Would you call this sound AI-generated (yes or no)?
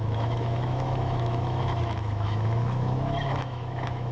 yes